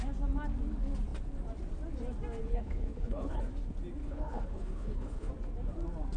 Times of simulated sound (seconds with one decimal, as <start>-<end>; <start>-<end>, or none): 2.4-3.4; 4.0-5.3